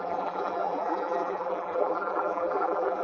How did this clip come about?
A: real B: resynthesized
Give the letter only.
B